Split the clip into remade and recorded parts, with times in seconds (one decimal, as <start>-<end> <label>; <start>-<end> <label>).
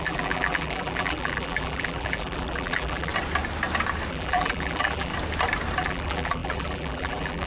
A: 0.0-3.1 remade; 3.1-4.1 recorded; 4.1-5.1 remade; 5.1-5.8 recorded; 5.8-7.5 remade